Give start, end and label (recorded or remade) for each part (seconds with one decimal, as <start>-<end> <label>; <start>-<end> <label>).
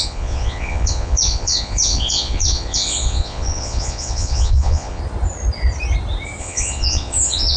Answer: 0.0-5.0 remade; 5.0-6.4 recorded; 6.4-7.6 remade